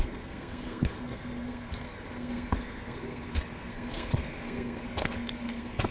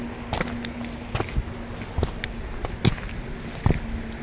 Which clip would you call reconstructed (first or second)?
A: first